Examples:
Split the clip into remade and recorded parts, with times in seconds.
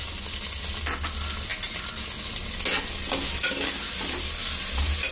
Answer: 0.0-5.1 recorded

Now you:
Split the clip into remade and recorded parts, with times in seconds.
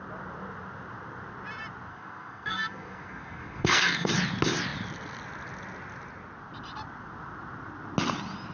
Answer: 0.0-1.9 recorded; 1.9-4.1 remade; 4.1-8.5 recorded